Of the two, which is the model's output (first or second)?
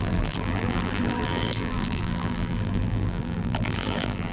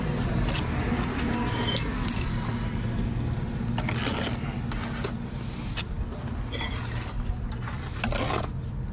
first